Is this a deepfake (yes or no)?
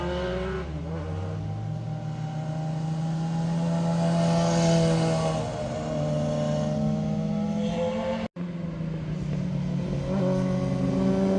no